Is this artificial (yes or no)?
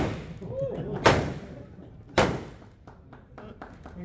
no